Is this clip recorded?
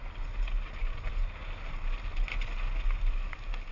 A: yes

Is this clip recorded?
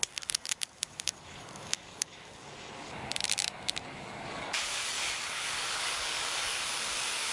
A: no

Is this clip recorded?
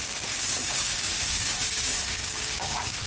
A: no